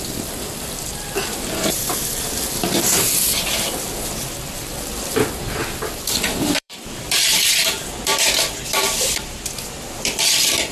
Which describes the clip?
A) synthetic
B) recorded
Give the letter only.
A